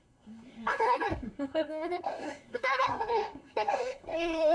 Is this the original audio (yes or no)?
no